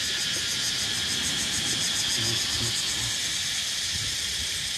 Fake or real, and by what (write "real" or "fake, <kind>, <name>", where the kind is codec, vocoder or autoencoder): real